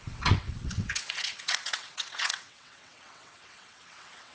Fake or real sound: fake